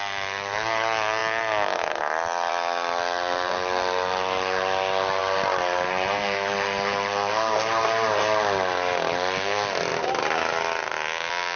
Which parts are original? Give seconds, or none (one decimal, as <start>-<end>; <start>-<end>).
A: 0.0-11.6